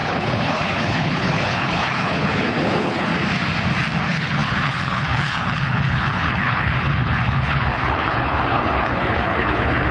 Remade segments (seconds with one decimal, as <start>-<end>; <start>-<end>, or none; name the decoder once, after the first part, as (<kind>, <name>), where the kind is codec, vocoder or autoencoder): 0.0-3.1 (codec, HILCodec); 4.0-9.9